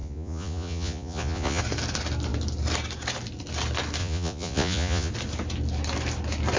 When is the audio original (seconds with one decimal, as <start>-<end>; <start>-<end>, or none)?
1.6-4.0; 5.1-6.6